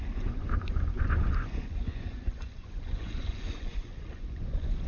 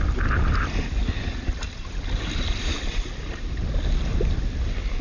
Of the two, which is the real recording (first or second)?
second